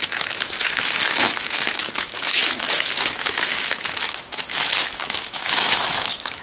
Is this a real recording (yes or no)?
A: no